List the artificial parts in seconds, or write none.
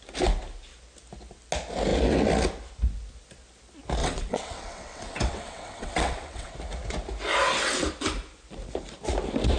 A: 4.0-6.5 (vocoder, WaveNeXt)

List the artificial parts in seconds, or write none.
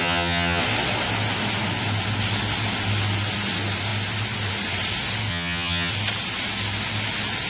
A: 0.0-0.6 (vocoder, HiFi-GAN); 5.3-5.9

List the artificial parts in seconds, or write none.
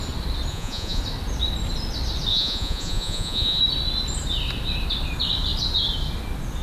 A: 0.5-1.0 (vocoder, Vocos); 2.3-3.6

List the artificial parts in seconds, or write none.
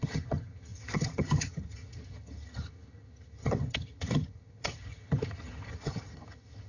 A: 0.0-6.7 (vocoder, HiFi-GAN)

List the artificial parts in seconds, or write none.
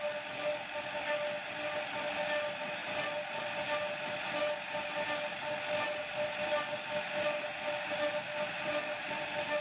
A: none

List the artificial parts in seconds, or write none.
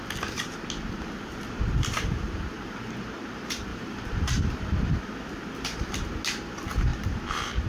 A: 3.7-5.0 (vocoder, BigVGAN v2); 6.9-7.7